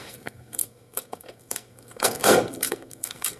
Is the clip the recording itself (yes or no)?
no